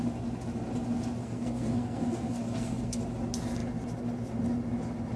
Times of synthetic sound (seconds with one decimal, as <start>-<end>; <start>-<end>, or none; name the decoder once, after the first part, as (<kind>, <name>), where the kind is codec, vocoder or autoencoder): 1.2-3.0 (codec, SNAC)